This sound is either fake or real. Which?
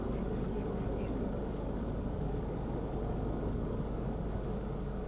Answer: fake